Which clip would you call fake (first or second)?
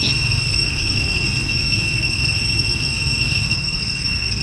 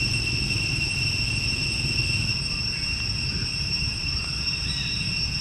first